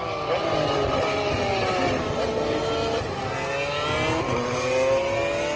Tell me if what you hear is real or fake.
real